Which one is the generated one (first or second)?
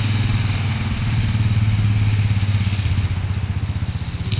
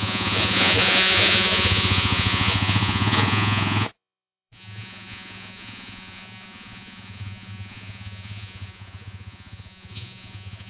second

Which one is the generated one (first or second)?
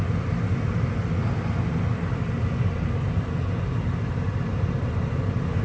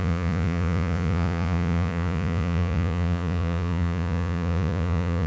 second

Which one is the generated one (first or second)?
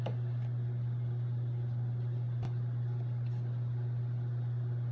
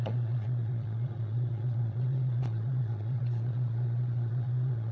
second